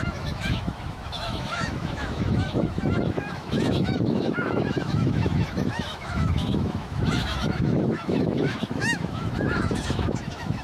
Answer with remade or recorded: remade